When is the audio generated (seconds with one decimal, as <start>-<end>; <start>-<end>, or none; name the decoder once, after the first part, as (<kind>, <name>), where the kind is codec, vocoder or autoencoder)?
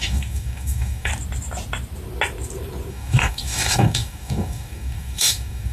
0.0-1.1 (codec, DAC); 2.9-5.7